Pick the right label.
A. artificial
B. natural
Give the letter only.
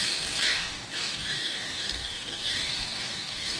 A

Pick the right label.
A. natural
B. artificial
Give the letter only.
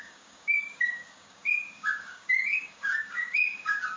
B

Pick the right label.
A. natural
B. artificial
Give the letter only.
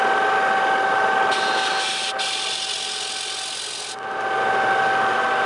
A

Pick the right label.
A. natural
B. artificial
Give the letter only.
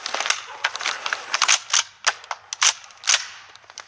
A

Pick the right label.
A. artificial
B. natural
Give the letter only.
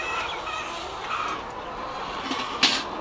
B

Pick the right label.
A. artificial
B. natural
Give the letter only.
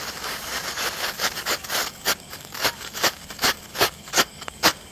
A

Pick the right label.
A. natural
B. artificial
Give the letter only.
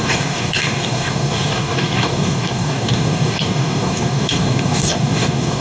B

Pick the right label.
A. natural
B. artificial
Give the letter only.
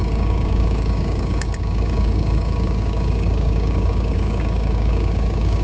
B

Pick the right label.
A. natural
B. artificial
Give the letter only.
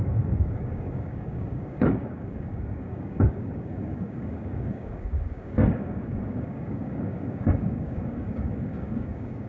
B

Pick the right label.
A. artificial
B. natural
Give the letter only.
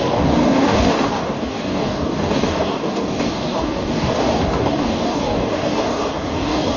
A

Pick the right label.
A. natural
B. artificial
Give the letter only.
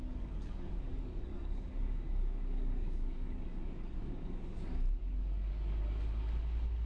B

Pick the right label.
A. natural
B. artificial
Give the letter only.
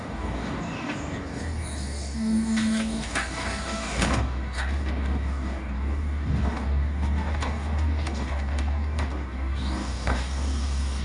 B